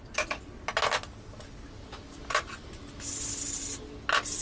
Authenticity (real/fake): real